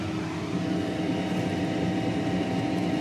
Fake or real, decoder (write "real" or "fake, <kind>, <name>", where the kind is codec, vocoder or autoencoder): real